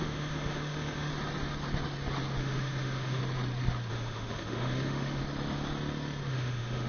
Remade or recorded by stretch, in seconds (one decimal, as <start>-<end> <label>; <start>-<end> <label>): 0.0-1.1 remade; 1.1-2.4 recorded; 2.4-3.2 remade; 3.2-3.9 recorded; 3.9-5.2 remade; 5.2-6.3 recorded; 6.3-6.9 remade